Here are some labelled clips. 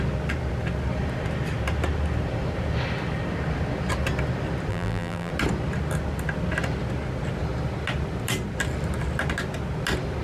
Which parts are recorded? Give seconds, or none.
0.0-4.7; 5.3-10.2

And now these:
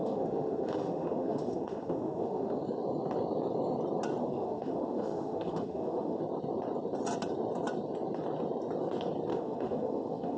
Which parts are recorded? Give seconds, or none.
2.6-4.2; 6.2-9.3

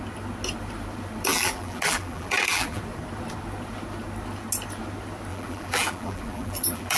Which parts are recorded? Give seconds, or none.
0.0-1.3; 2.8-5.3

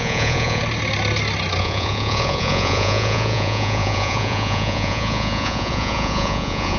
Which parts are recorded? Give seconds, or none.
0.6-1.6

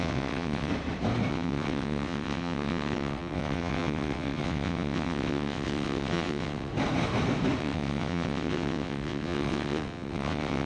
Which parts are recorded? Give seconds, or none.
0.7-1.3; 6.7-7.6

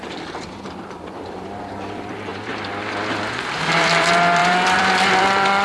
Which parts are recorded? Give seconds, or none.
2.3-3.5

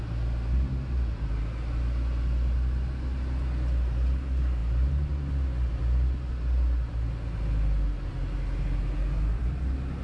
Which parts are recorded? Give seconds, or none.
0.0-10.0

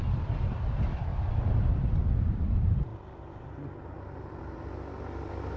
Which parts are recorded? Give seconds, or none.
0.0-0.6; 1.1-1.8